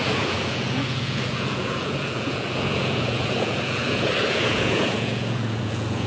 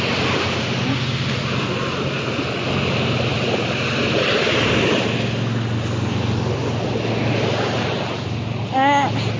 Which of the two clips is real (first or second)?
second